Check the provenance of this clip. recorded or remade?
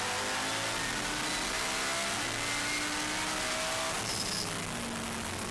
recorded